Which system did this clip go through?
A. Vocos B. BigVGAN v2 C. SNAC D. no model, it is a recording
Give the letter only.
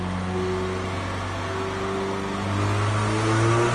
D